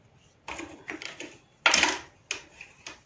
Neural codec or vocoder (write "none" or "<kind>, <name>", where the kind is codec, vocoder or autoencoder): none